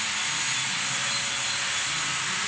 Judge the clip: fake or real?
real